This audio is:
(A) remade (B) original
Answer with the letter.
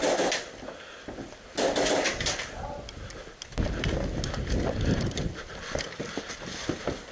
B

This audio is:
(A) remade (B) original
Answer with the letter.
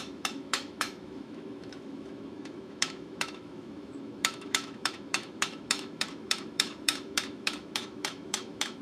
A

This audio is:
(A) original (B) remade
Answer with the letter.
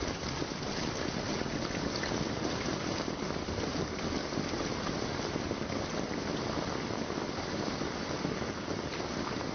A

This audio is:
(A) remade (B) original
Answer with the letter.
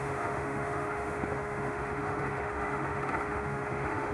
A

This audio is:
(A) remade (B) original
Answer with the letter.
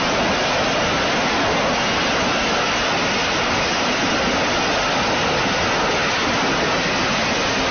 B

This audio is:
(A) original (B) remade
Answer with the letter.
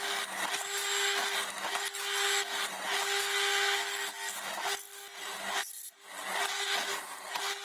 A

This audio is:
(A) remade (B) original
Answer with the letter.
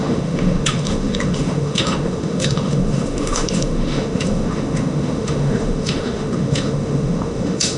A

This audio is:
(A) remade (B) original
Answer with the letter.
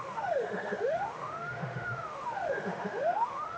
A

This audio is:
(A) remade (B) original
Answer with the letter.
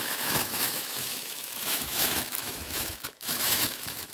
A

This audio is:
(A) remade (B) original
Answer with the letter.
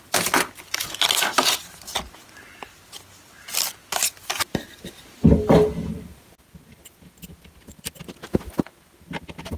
B